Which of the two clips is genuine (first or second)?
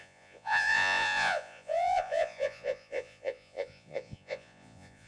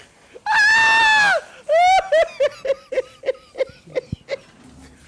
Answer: second